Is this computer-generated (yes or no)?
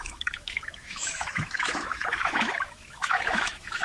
yes